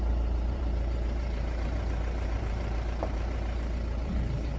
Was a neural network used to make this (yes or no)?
yes